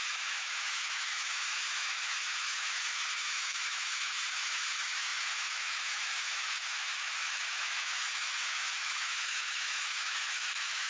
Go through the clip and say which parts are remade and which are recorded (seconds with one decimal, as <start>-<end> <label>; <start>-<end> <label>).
0.0-10.9 remade